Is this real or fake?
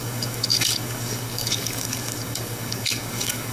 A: fake